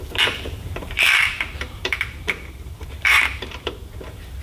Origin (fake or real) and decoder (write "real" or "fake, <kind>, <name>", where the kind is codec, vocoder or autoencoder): fake, vocoder, BigVGAN v2